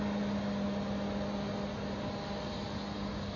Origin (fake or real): real